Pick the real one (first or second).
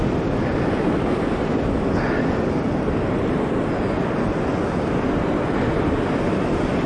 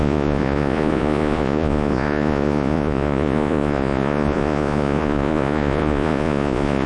first